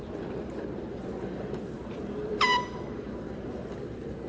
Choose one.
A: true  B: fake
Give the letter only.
B